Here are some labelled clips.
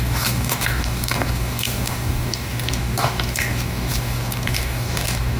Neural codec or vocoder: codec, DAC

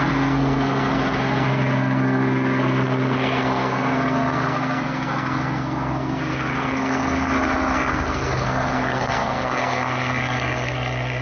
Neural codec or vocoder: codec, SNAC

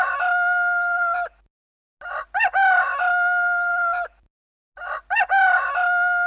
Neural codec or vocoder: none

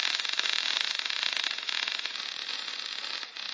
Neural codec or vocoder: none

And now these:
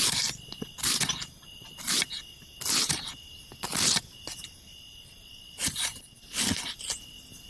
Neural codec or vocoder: none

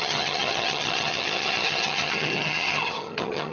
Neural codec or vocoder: vocoder, HiFi-GAN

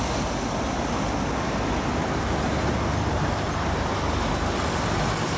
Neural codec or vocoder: none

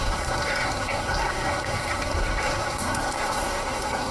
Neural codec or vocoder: codec, SNAC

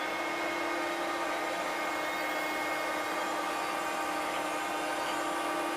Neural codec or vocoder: none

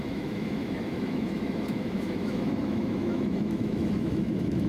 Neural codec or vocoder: autoencoder, DAC-VAE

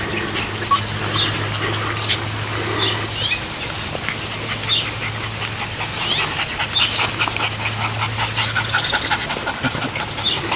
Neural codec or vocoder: none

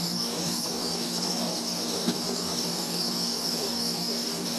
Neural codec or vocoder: codec, DAC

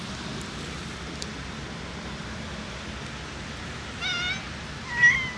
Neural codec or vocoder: none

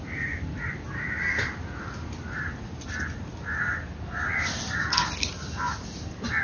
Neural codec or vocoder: none